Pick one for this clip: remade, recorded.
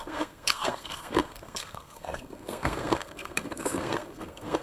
remade